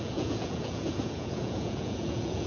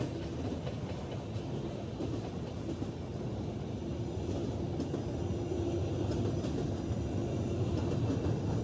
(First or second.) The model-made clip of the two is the first